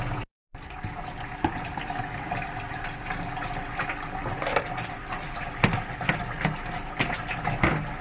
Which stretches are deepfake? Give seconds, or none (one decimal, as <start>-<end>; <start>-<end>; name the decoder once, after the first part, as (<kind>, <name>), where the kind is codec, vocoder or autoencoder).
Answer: 4.2-5.4 (vocoder, BigVGAN v2)